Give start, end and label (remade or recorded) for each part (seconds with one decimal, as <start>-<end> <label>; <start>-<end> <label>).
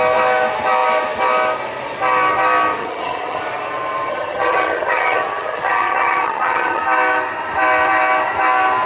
0.0-2.8 recorded; 2.8-3.4 remade; 3.4-4.1 recorded; 4.1-6.8 remade; 6.8-8.9 recorded